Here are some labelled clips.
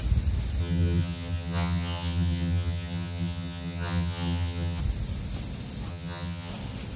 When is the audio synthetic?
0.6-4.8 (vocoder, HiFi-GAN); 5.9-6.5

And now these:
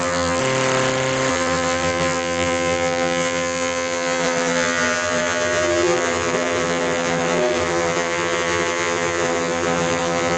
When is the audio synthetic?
0.0-0.4 (vocoder, BigVGAN v2); 1.3-10.4

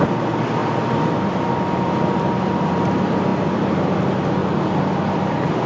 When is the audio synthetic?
0.6-2.9 (vocoder, BigVGAN v2)

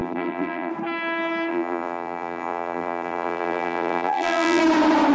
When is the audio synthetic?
0.0-0.7 (vocoder, BigVGAN v2); 1.5-4.6